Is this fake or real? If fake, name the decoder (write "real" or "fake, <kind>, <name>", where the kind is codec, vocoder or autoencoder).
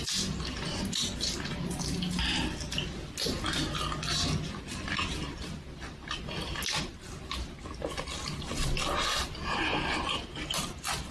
real